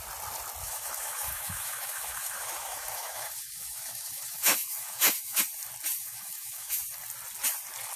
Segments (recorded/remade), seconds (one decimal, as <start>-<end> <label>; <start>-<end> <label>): 0.0-0.6 recorded; 0.6-5.4 remade; 5.4-6.0 recorded; 6.0-6.8 remade; 6.8-8.0 recorded